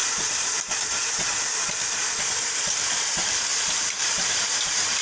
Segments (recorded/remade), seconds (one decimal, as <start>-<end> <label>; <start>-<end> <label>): 0.0-5.0 recorded